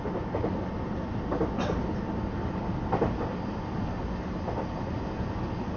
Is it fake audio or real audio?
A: real